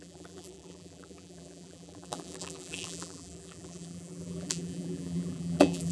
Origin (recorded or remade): remade